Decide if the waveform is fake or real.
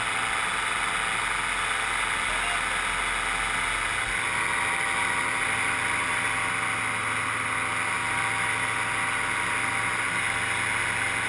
real